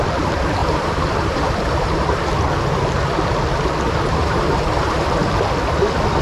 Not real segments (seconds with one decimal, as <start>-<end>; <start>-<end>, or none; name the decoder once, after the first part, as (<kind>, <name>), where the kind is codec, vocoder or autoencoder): 0.6-2.3 (vocoder, BigVGAN v2); 4.2-5.4